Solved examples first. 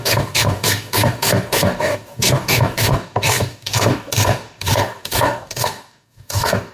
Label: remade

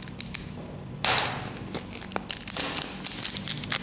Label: recorded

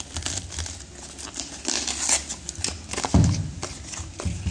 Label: recorded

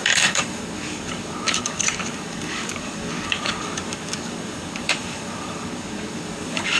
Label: remade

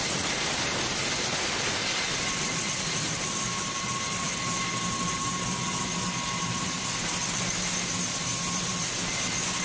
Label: recorded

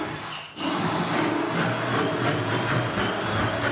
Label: recorded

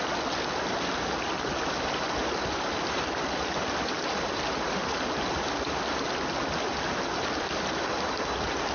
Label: recorded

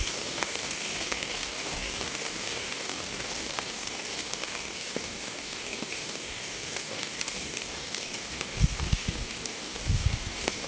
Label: remade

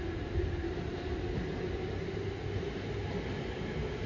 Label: recorded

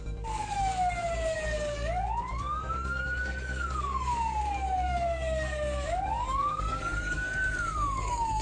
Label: remade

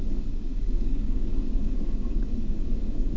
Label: remade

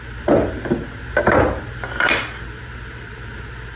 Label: recorded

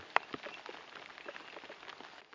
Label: recorded